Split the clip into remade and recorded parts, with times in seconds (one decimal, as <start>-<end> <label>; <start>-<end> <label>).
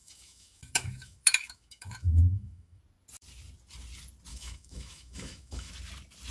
0.0-2.8 remade; 2.8-4.3 recorded; 4.3-5.7 remade; 5.7-6.3 recorded